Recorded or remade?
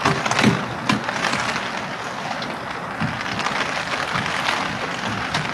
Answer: recorded